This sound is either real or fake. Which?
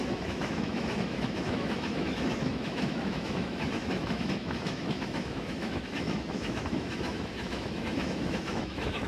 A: fake